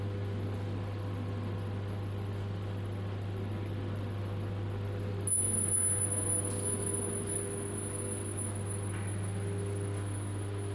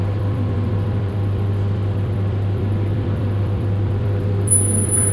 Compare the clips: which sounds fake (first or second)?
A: second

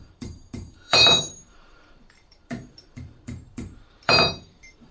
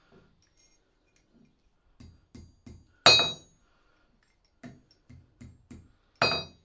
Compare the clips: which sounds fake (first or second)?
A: first